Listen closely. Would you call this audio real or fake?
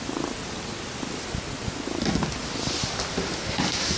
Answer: real